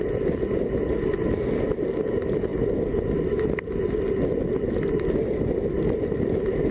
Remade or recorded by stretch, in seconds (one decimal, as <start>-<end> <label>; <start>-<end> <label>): 0.0-6.7 recorded